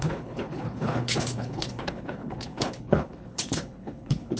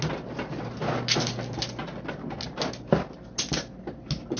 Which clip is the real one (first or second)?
second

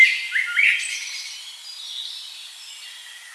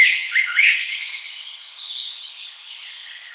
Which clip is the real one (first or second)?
first